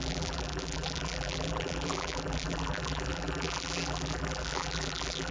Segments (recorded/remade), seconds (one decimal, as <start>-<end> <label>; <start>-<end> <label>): 0.0-5.3 remade